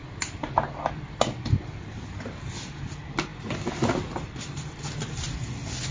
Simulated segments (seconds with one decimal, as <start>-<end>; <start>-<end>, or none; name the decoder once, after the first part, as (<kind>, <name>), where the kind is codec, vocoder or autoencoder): 0.0-1.4 (vocoder, BigVGAN v2); 3.3-4.7